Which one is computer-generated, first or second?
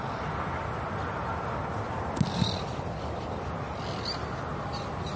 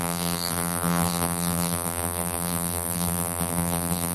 second